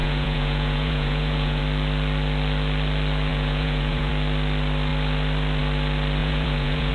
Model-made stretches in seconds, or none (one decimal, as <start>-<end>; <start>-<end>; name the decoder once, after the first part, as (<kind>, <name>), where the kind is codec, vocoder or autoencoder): 0.0-1.6 (vocoder, Vocos); 3.3-4.1; 6.2-6.9